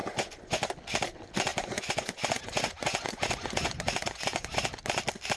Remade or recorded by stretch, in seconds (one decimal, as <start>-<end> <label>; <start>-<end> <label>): 0.0-0.7 remade; 0.7-1.5 recorded; 1.5-4.7 remade; 4.7-5.4 recorded